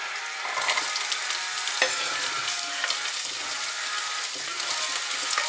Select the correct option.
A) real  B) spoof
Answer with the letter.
A